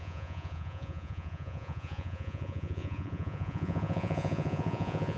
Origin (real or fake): fake